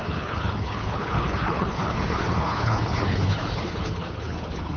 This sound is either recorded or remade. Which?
remade